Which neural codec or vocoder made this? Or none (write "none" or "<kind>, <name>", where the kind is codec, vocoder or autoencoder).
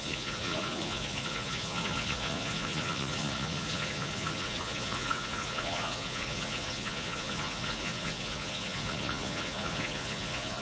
vocoder, Vocos